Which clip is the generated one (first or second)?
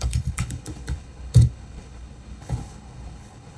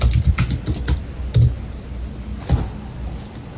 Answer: first